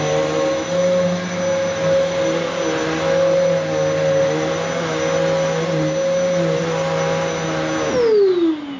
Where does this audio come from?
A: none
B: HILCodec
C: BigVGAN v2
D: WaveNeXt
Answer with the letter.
A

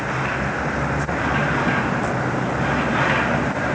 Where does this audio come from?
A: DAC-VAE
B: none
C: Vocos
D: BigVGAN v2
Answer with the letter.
B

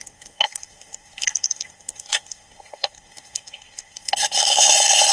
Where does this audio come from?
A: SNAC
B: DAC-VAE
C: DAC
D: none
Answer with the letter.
A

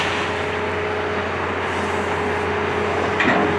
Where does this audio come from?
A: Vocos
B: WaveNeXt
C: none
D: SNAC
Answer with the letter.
C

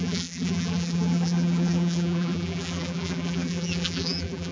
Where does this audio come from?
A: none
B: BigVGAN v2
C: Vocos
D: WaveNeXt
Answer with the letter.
B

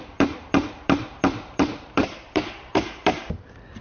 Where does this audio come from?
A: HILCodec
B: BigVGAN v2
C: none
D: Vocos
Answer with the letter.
B